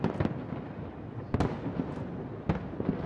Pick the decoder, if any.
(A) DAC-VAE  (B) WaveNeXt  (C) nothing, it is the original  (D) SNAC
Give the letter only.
C